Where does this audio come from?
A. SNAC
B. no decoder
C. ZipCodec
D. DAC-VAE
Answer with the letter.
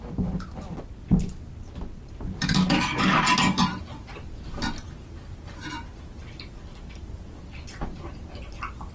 B